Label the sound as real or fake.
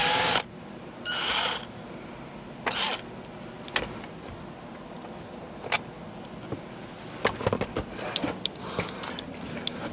real